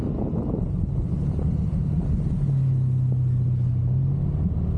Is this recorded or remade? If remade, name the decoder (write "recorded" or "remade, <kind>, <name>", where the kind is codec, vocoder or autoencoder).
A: recorded